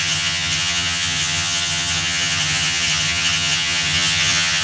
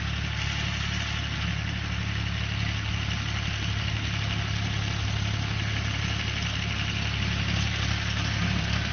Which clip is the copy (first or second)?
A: first